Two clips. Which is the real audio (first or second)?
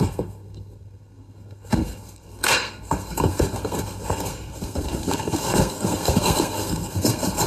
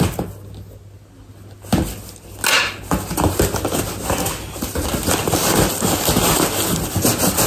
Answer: second